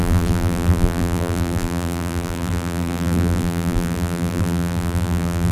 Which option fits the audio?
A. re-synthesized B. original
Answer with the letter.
A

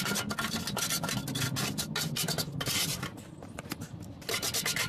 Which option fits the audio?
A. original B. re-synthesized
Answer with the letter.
A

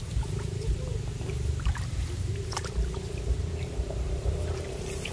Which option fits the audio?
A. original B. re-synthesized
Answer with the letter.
B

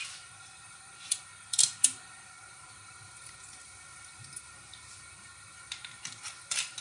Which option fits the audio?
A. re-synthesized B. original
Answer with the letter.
A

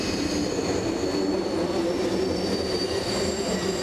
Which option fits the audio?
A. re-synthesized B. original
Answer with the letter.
B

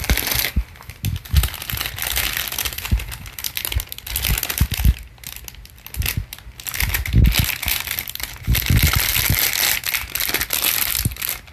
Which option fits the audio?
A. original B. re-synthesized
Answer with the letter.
A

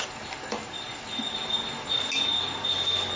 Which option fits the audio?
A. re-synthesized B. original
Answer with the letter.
B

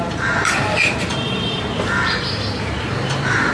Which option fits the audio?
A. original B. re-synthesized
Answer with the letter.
B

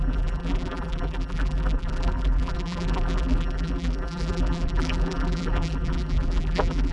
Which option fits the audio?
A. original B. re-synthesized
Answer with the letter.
B